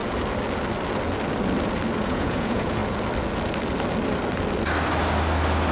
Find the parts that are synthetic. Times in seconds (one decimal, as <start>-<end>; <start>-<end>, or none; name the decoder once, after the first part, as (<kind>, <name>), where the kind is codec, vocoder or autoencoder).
2.0-2.8 (vocoder, Vocos)